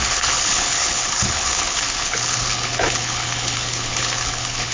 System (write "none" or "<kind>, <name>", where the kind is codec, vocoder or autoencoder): codec, HILCodec